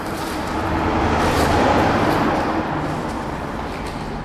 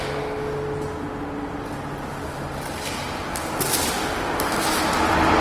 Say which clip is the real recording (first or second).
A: second